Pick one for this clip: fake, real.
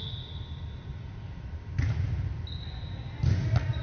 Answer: real